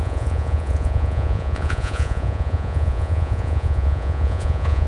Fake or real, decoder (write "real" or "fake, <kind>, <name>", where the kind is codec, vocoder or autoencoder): fake, vocoder, Vocos